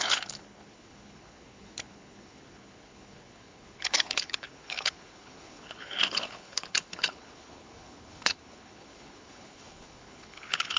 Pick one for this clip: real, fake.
fake